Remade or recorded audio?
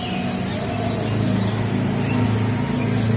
recorded